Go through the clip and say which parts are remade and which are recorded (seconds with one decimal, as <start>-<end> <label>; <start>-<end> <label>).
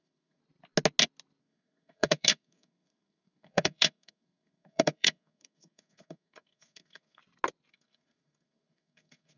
0.0-0.4 remade; 0.4-1.4 recorded; 1.4-7.2 remade; 7.2-7.7 recorded; 7.7-9.4 remade